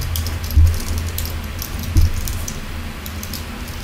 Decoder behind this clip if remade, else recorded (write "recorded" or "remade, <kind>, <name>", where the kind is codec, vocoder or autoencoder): recorded